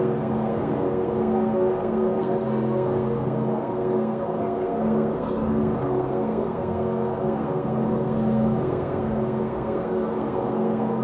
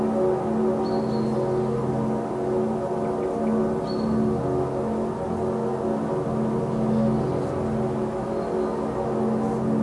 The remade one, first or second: first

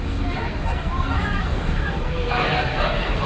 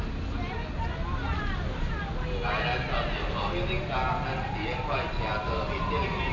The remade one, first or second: first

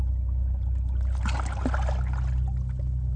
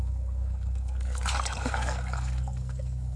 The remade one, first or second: second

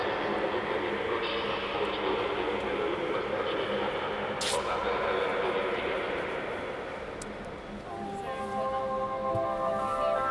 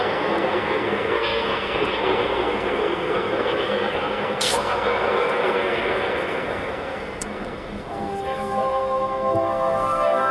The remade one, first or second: second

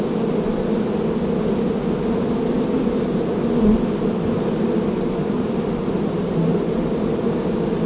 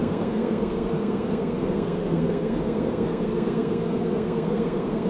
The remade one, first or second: second